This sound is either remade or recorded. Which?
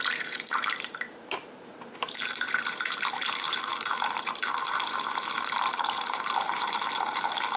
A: remade